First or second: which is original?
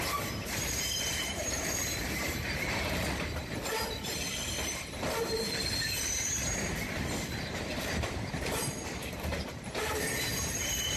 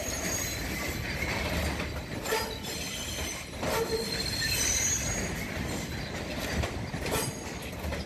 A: second